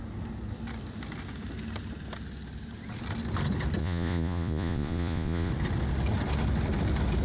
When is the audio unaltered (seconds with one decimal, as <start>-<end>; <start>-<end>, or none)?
0.0-3.8; 5.5-7.2